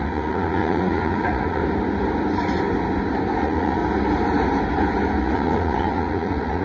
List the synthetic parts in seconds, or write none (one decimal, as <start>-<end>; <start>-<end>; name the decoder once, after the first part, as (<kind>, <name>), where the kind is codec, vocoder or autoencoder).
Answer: 0.0-1.6 (vocoder, Vocos); 3.4-3.8; 5.2-6.6